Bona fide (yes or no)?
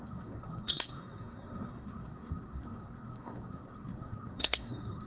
no